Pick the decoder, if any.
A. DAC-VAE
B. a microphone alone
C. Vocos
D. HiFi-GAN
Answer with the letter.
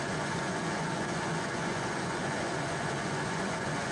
C